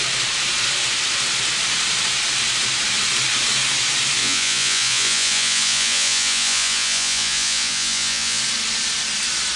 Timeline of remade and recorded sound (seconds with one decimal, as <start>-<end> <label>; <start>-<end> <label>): 0.0-4.2 recorded; 4.2-8.4 remade; 8.4-9.6 recorded